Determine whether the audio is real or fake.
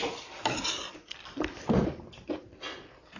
real